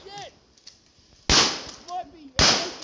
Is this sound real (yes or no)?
yes